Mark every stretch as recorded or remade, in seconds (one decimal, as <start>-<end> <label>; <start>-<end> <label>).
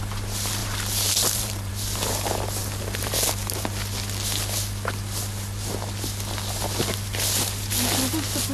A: 0.0-0.6 recorded; 0.6-1.7 remade; 1.7-8.5 recorded